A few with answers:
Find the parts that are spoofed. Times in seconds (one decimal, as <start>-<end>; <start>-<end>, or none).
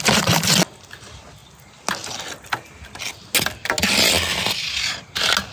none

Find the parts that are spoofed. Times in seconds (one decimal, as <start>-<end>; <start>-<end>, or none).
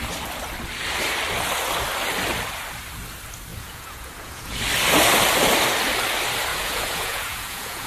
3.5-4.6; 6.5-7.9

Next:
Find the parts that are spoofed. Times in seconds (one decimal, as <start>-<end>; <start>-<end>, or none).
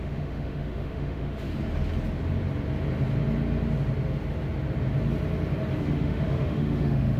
0.0-1.5; 5.8-7.2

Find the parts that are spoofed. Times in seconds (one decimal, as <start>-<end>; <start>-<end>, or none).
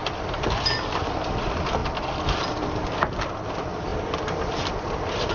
none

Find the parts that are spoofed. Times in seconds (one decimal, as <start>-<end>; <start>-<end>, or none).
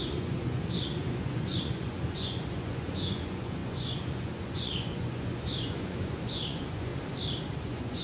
0.0-6.9; 7.6-8.0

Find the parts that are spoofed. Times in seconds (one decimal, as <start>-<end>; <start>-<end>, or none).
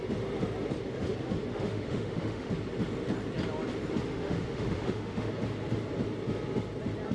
1.5-2.5; 4.1-5.3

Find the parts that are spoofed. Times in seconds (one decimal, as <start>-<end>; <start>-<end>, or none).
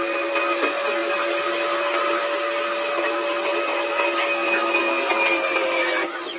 none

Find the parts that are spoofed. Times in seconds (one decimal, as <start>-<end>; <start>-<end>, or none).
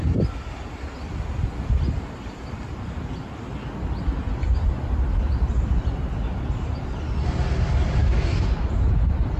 8.0-8.7